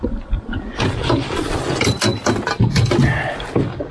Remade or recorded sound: recorded